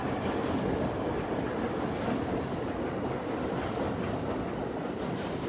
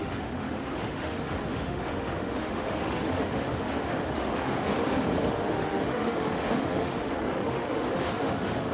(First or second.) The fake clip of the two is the second